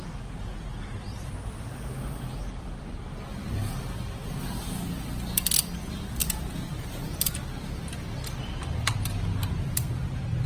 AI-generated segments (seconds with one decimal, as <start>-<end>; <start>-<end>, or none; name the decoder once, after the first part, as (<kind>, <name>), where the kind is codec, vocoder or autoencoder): 6.2-7.3 (vocoder, BigVGAN v2)